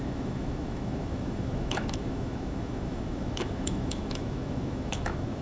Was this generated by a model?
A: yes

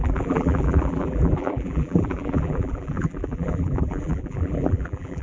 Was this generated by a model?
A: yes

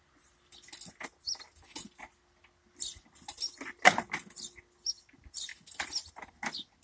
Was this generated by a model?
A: no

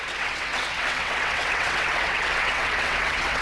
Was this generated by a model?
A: yes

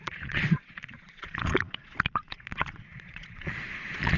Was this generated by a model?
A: yes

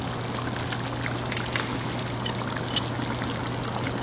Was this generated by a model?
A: no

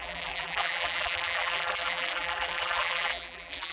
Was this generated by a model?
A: yes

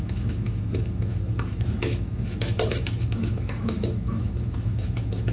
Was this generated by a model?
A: yes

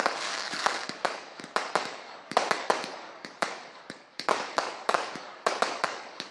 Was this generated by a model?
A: yes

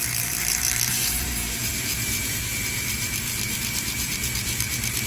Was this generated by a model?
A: yes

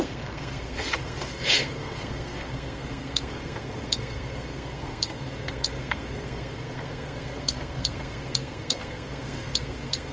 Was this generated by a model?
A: yes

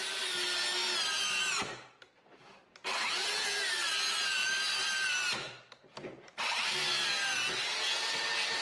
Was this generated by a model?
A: no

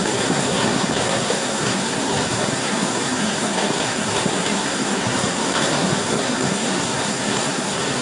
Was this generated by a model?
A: yes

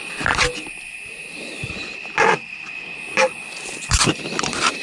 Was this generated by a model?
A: no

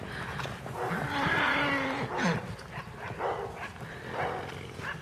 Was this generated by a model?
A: no